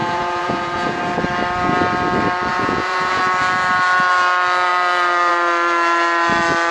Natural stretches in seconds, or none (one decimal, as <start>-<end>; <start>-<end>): 1.0-2.5; 3.2-6.7